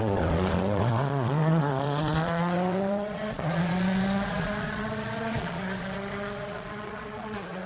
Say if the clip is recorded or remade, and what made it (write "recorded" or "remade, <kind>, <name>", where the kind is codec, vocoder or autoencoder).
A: remade, vocoder, Vocos